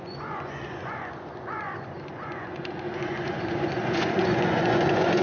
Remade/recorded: remade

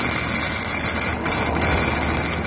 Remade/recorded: recorded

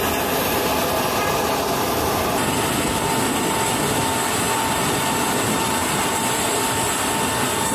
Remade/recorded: recorded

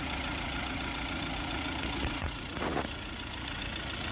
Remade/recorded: remade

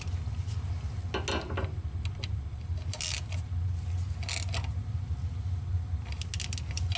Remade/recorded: recorded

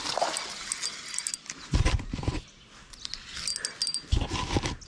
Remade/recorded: recorded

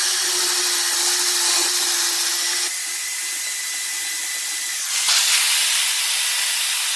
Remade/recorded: recorded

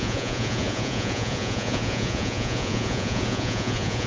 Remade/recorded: remade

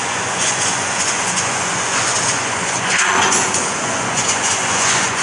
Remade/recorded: remade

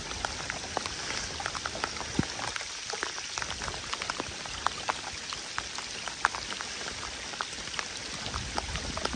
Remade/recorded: recorded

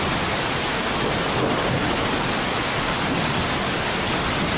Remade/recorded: recorded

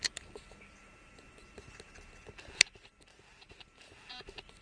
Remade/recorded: recorded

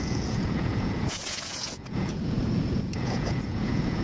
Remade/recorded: remade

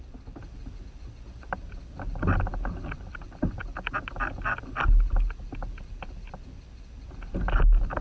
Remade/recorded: recorded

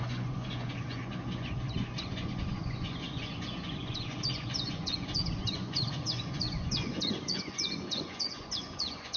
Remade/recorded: remade